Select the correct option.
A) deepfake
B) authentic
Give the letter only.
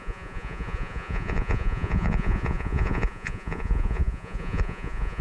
A